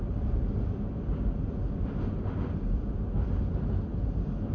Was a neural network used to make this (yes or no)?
no